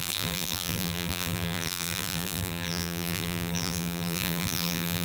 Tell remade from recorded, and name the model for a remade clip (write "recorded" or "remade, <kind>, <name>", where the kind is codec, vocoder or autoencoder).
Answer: remade, vocoder, BigVGAN v2